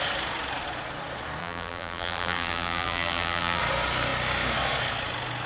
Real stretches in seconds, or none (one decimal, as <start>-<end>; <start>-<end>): 0.0-1.4; 3.6-5.5